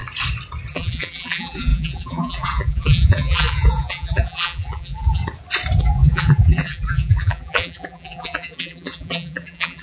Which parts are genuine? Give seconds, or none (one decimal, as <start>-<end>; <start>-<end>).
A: 0.0-0.7; 5.2-5.8